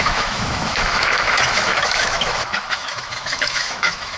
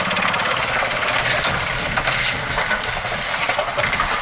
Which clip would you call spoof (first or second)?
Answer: first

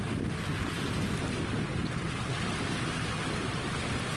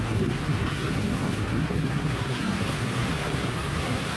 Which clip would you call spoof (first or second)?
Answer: second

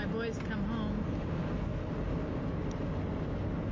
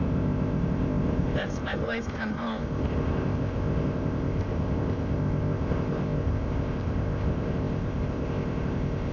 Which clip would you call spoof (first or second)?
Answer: second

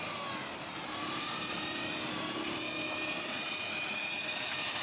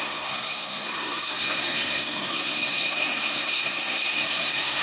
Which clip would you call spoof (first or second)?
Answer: second